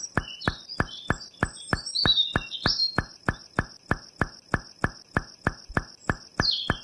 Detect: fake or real real